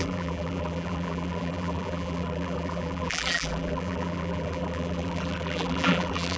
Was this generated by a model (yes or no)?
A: yes